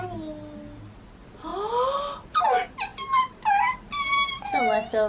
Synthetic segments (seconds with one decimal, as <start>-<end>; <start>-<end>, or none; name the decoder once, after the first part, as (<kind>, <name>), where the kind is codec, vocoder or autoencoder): none